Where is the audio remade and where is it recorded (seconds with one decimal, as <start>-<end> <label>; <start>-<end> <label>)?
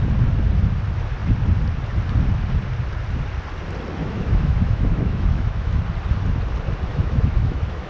0.0-4.0 recorded; 4.0-5.8 remade; 5.8-6.9 recorded; 6.9-7.9 remade